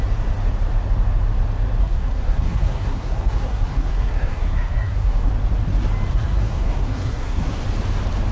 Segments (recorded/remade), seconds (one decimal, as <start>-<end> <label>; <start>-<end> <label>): 0.0-1.8 recorded; 1.8-5.3 remade; 5.3-6.1 recorded; 6.1-7.6 remade; 7.6-8.3 recorded

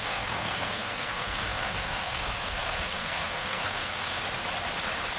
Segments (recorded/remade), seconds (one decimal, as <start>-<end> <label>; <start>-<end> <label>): 0.0-4.2 remade; 4.2-5.2 recorded

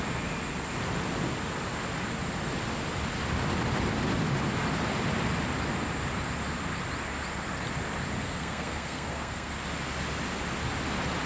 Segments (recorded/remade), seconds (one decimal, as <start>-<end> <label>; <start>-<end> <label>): 0.0-8.2 recorded; 8.2-9.5 remade; 9.5-11.3 recorded